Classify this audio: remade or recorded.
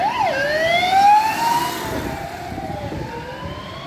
recorded